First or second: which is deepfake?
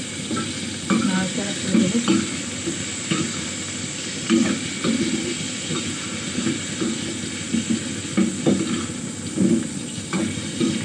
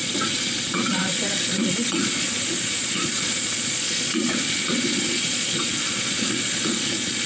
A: second